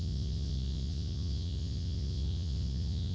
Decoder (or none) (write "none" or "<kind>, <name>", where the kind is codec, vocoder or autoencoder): vocoder, Vocos